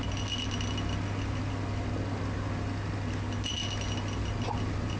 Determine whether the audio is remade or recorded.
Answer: recorded